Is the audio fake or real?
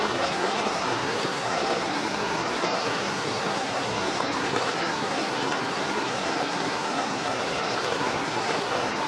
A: fake